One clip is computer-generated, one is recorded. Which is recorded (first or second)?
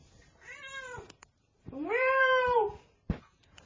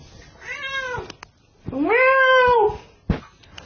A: second